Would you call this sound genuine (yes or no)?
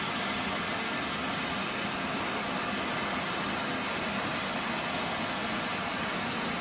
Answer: yes